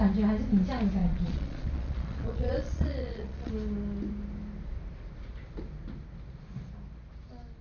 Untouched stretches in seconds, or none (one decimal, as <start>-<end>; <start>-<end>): 0.0-1.0; 3.5-7.6